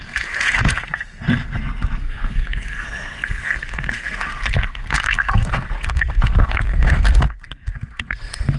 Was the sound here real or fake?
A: fake